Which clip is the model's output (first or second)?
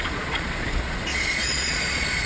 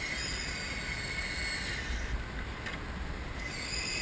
first